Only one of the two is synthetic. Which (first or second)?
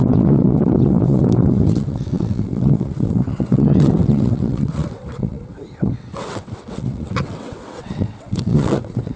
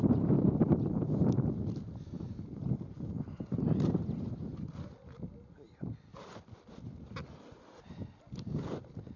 first